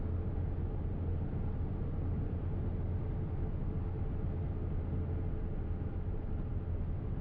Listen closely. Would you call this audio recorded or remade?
recorded